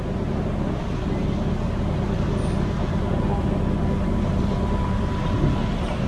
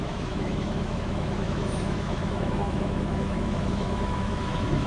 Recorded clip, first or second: first